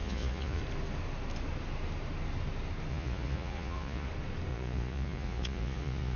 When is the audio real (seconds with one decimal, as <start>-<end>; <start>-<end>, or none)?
0.6-2.9; 4.1-4.5